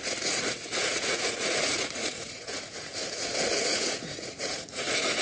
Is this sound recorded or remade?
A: remade